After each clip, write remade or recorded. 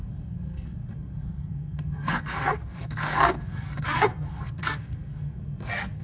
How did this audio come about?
remade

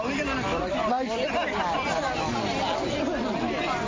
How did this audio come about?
recorded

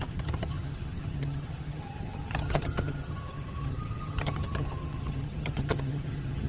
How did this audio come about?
remade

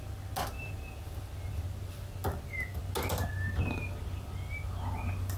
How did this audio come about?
recorded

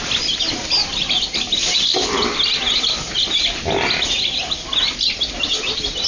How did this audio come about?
recorded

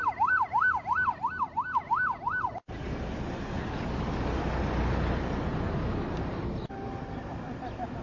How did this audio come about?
recorded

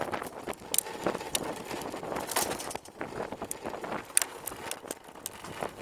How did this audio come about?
recorded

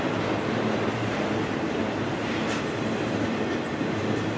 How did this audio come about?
remade